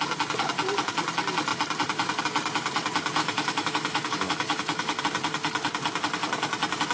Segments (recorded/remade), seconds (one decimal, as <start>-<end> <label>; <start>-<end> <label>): 0.0-3.2 recorded; 3.2-5.0 remade; 5.0-6.9 recorded